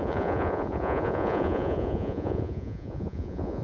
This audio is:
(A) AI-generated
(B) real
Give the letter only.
A